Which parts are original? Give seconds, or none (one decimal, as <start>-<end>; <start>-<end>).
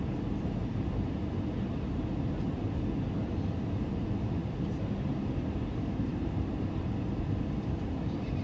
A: 0.0-4.4; 6.5-8.4